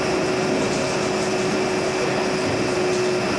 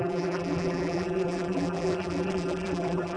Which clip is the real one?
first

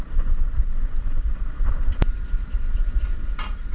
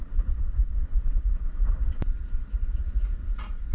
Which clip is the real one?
first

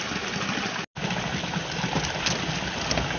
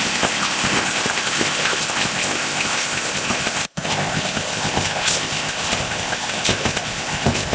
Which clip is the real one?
first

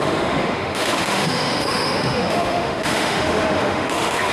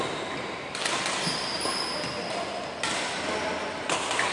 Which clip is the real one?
second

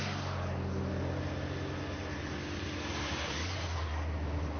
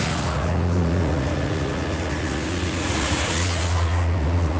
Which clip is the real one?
first